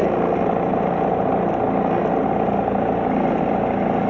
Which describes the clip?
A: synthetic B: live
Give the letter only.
B